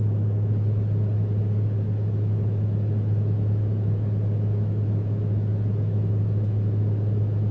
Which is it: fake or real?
fake